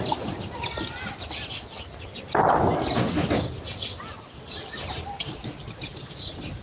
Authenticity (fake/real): real